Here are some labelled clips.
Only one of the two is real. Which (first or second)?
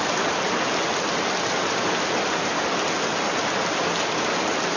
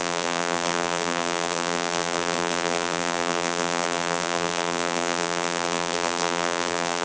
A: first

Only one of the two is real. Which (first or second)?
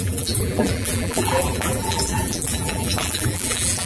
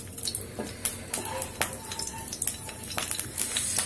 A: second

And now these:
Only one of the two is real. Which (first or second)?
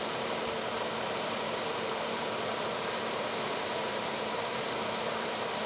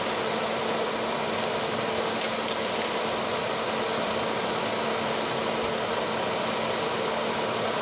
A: second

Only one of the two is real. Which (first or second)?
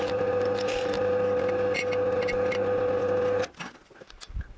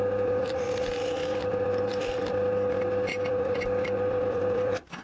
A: first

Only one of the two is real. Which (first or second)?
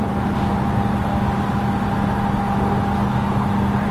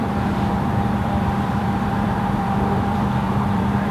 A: first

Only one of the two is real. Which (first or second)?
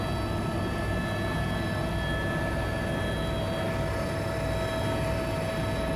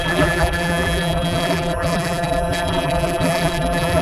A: first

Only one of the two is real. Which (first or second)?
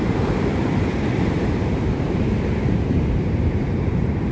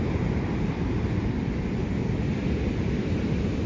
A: second